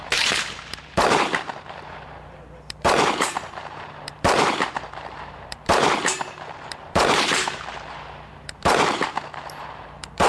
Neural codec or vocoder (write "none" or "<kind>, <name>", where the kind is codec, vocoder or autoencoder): vocoder, BigVGAN v2